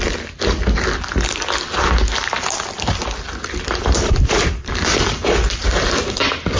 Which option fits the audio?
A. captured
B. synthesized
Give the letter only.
A